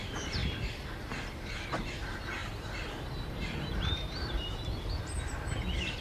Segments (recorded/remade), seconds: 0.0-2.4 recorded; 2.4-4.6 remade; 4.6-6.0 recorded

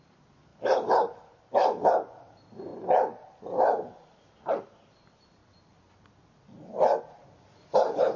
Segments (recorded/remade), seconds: 0.0-2.7 remade; 2.7-3.3 recorded; 3.3-5.4 remade; 5.4-7.0 recorded; 7.0-8.2 remade

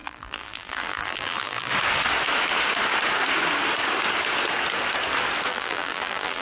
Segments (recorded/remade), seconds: 0.0-1.7 remade; 1.7-5.5 recorded; 5.5-6.4 remade

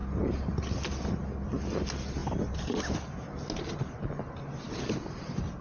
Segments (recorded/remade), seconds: 0.0-0.7 remade; 0.7-2.2 recorded; 2.2-2.8 remade; 2.8-5.6 recorded

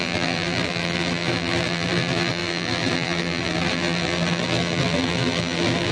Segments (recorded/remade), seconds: 0.0-5.9 remade

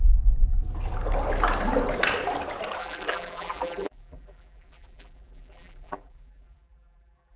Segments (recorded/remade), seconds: 0.0-2.8 recorded; 2.8-7.4 remade

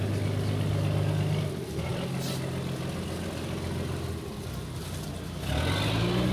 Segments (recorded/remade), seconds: 0.0-6.3 recorded